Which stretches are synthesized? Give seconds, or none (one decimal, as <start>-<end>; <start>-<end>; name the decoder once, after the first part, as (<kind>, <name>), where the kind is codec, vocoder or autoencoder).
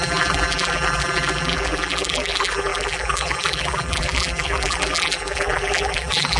0.0-6.4 (vocoder, BigVGAN v2)